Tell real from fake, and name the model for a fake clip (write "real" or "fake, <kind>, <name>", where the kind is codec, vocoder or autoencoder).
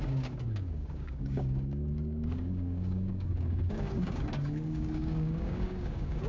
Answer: fake, codec, DAC